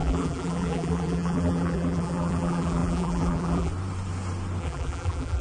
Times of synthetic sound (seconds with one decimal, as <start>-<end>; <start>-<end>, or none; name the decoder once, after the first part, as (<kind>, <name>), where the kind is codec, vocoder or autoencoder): 0.0-3.7 (vocoder, BigVGAN v2); 4.6-5.4